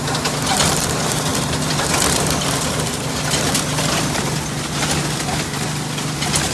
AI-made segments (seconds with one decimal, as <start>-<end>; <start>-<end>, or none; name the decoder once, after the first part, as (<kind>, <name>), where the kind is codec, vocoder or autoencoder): 1.3-3.1 (vocoder, BigVGAN v2)